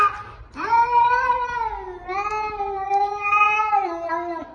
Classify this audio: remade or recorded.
recorded